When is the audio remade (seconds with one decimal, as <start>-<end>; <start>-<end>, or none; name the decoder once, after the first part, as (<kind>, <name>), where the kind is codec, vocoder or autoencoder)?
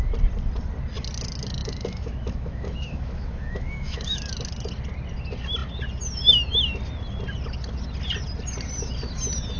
1.6-4.2 (autoencoder, DAC-VAE)